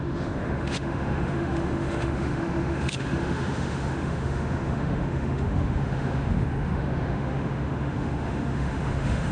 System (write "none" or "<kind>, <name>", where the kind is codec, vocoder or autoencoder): autoencoder, DAC-VAE